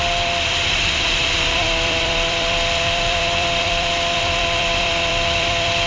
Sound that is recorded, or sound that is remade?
remade